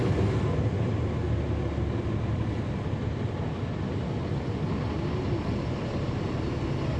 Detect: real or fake real